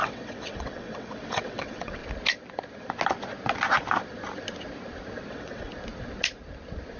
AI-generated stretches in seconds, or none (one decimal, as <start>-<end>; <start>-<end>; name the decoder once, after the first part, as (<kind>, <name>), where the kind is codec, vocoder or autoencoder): 0.0-2.0 (vocoder, WaveNeXt); 5.3-5.7